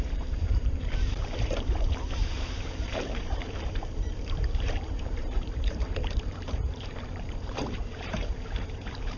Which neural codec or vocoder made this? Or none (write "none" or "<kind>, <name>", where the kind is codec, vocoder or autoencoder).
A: vocoder, BigVGAN v2